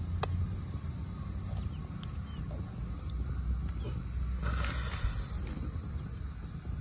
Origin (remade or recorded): recorded